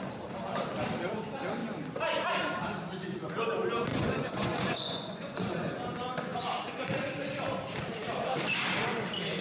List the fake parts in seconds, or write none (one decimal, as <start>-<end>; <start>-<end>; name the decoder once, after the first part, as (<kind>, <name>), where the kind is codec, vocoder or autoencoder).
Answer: 3.9-5.7 (vocoder, Vocos); 6.3-6.8